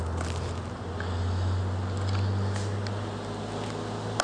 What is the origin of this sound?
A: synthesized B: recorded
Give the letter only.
B